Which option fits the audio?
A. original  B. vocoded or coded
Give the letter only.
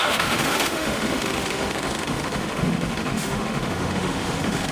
B